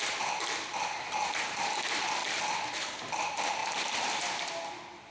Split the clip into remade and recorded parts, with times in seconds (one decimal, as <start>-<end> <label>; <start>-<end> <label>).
0.0-2.2 recorded; 2.2-2.7 remade; 2.7-5.1 recorded